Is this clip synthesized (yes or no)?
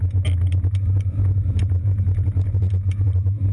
no